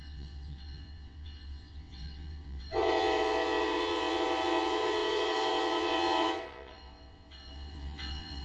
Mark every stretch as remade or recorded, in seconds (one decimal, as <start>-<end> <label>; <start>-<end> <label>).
0.0-8.4 remade